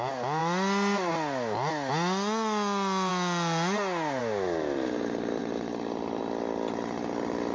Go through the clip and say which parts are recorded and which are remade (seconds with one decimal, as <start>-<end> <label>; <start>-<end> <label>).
0.0-5.4 recorded; 5.4-6.2 remade; 6.2-7.5 recorded